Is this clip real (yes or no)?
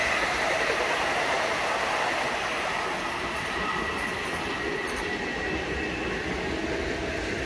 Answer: yes